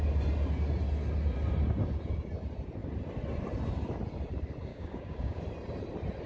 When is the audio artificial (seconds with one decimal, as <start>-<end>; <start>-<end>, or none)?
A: 4.7-5.4